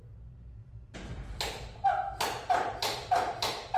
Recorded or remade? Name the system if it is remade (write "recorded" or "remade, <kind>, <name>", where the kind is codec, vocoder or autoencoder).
recorded